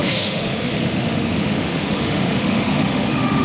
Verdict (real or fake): fake